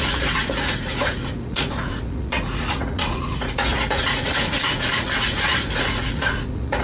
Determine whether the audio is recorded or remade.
remade